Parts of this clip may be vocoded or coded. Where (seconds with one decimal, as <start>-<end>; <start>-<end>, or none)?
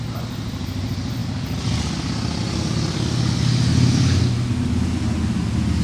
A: none